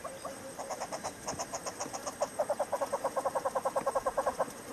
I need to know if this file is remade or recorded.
remade